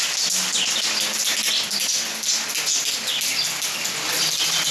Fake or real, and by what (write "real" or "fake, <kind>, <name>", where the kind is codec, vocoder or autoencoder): real